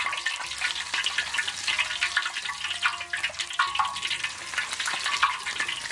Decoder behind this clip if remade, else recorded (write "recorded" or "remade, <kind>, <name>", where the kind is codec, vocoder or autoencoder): recorded